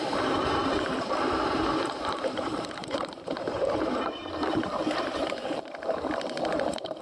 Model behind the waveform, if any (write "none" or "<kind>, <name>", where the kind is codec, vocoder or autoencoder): vocoder, BigVGAN v2